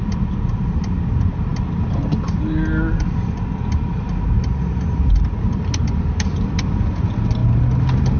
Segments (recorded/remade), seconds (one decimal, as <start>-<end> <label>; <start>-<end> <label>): 0.0-8.2 recorded